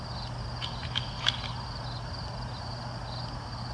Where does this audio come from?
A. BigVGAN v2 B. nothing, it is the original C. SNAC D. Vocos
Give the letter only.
B